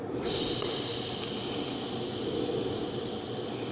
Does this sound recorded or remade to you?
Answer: recorded